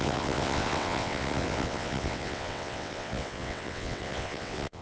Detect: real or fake fake